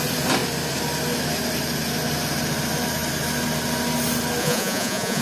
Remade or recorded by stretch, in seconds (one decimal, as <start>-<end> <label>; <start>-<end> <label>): 0.0-4.4 recorded; 4.4-5.2 remade